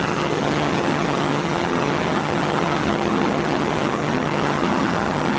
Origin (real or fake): fake